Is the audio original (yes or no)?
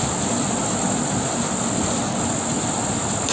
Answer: yes